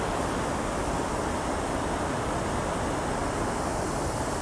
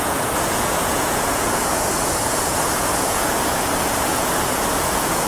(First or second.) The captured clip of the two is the first